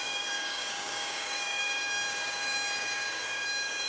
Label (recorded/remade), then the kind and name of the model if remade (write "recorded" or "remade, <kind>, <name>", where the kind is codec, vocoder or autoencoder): remade, codec, DAC